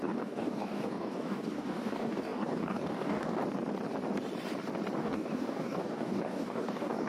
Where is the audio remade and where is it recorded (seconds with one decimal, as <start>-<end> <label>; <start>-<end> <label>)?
0.0-3.4 remade; 3.4-5.0 recorded; 5.0-7.1 remade